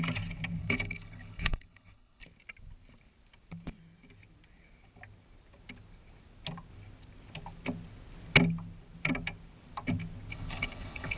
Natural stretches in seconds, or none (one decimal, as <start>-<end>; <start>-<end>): 0.0-0.6; 2.2-10.3